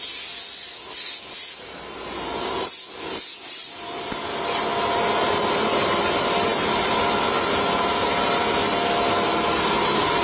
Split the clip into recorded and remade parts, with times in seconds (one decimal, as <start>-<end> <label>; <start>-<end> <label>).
0.0-10.2 recorded